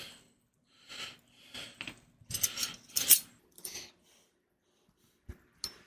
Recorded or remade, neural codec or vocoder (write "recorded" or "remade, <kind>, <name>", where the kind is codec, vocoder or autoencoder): recorded